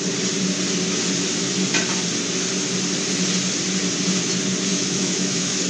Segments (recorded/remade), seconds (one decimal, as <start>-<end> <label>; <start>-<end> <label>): 0.0-4.7 recorded; 4.7-5.7 remade